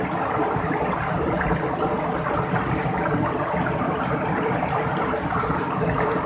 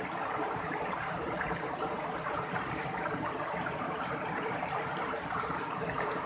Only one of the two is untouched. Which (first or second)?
first